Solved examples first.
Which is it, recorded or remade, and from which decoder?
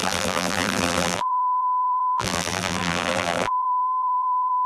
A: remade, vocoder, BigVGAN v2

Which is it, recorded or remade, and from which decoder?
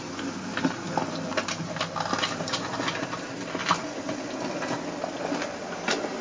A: recorded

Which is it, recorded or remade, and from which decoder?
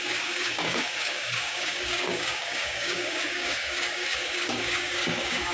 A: remade, codec, DAC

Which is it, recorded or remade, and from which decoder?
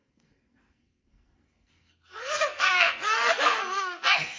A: remade, codec, SNAC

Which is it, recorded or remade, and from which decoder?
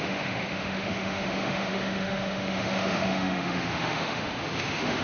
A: remade, autoencoder, DAC-VAE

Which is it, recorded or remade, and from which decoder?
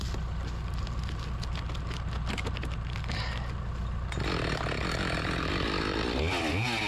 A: recorded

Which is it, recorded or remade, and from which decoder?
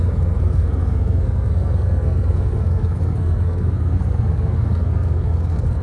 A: remade, codec, SNAC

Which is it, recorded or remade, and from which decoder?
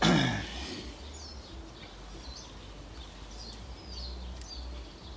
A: recorded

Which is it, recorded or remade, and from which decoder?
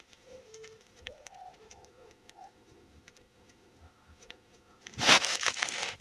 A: remade, autoencoder, DAC-VAE